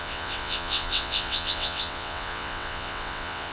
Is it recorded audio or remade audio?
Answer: remade